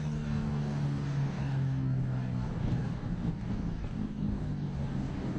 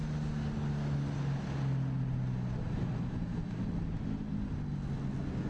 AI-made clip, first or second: first